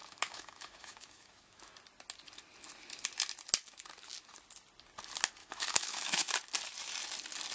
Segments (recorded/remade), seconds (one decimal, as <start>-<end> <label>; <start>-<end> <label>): 0.0-1.7 remade; 1.7-5.4 recorded; 5.4-6.3 remade; 6.3-7.5 recorded